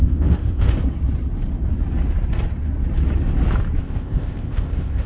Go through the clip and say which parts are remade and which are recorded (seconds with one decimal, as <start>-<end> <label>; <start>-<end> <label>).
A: 0.0-0.7 remade; 0.7-3.8 recorded; 3.8-5.1 remade